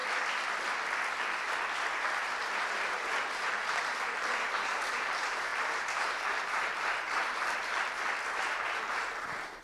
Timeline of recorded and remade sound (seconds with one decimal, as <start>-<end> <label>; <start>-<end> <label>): 0.0-2.5 recorded; 2.5-9.6 remade